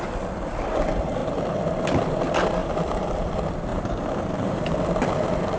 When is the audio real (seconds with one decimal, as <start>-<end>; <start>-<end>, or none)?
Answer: 0.0-2.6; 3.3-3.7; 4.8-5.6